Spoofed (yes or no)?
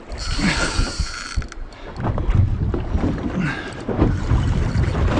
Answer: no